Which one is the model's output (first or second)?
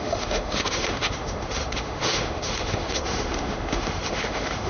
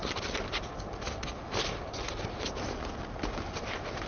first